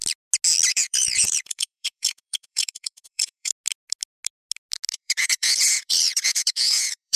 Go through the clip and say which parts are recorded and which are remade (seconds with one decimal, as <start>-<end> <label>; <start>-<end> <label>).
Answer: 0.0-0.7 recorded; 0.7-3.5 remade; 3.5-4.9 recorded; 4.9-7.2 remade